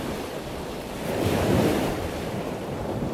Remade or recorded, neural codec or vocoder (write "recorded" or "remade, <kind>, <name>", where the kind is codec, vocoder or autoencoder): remade, vocoder, BigVGAN v2